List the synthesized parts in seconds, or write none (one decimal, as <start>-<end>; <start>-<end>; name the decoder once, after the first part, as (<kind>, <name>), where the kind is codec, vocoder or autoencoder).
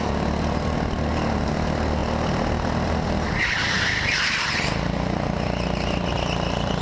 none